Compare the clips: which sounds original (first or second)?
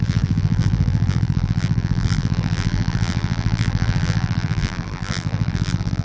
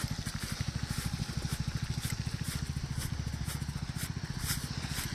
second